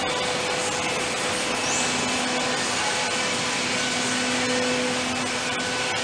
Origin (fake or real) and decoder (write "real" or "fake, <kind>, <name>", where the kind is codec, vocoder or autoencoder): real